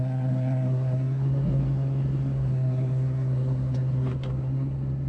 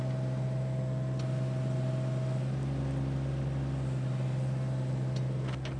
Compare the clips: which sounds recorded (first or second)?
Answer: second